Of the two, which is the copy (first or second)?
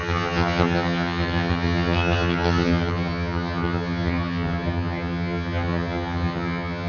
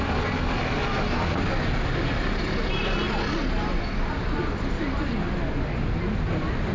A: first